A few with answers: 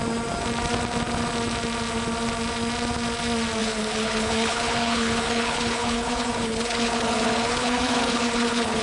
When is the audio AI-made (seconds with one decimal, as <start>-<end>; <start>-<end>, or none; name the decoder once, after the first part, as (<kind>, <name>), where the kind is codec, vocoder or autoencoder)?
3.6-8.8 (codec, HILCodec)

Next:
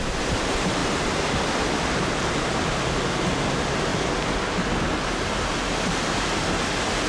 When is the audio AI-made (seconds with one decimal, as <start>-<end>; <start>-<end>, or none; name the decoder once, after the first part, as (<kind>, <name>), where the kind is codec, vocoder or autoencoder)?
0.8-2.3 (vocoder, BigVGAN v2)

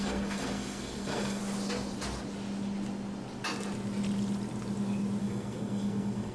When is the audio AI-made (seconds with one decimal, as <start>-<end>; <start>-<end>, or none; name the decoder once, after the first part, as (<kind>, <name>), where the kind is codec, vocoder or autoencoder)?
0.0-1.4 (codec, SNAC); 5.2-6.3

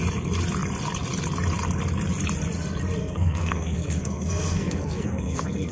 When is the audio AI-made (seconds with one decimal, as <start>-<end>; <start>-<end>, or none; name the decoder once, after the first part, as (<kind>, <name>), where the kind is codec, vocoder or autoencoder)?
3.0-5.7 (codec, SNAC)

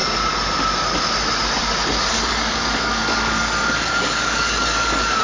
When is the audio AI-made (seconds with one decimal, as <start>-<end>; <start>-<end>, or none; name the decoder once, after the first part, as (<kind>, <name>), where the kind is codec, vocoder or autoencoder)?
2.1-5.2 (codec, DAC)

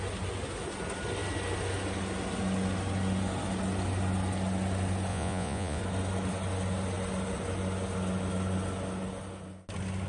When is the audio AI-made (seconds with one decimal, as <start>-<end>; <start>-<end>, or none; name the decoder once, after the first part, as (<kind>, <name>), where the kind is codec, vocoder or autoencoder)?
5.1-5.8 (vocoder, Vocos)

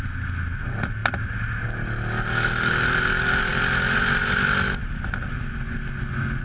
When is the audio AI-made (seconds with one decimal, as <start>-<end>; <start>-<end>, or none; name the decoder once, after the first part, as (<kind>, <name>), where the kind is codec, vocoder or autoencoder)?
none

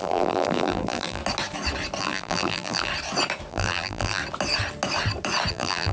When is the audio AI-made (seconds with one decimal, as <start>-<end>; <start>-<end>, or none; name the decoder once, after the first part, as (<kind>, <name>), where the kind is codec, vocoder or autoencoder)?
0.0-1.2 (vocoder, BigVGAN v2); 2.0-2.9; 3.5-4.2; 5.5-5.9